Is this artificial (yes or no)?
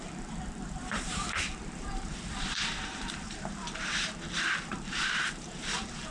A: yes